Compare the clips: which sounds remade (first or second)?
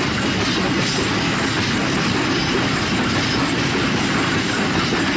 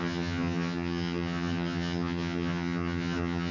second